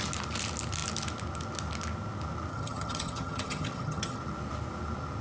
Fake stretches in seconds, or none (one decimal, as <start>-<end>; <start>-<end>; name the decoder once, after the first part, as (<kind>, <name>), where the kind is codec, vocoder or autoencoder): 2.5-4.2 (vocoder, HiFi-GAN)